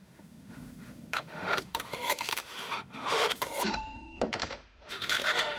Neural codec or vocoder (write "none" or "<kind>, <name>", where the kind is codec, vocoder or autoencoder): autoencoder, DAC-VAE